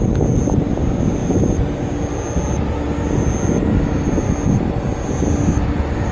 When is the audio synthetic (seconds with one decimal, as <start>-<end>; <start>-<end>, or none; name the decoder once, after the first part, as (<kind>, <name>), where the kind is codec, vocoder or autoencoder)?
1.2-1.8 (vocoder, BigVGAN v2)

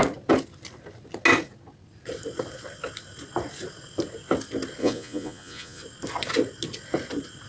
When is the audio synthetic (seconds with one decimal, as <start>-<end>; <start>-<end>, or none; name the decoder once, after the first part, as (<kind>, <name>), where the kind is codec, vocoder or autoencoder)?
4.8-5.8 (vocoder, Vocos)

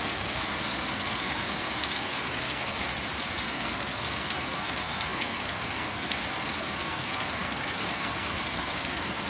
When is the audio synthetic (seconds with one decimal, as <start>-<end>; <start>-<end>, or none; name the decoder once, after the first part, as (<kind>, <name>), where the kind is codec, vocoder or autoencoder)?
0.0-2.9 (codec, SNAC); 3.4-9.3

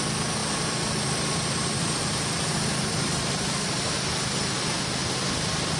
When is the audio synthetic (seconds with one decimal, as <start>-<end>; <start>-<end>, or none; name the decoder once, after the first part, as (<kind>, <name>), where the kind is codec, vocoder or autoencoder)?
0.4-3.9 (vocoder, BigVGAN v2)